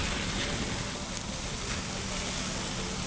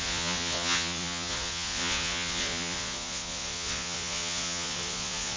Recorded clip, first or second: first